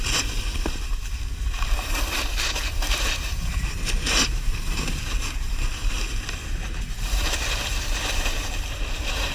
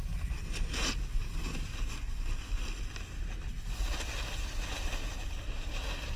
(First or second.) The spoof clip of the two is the first